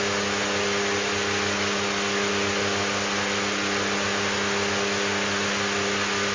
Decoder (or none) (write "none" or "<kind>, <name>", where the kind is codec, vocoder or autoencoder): none